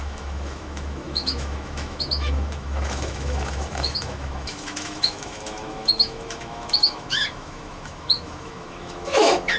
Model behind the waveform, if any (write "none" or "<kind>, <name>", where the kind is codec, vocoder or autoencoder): autoencoder, DAC-VAE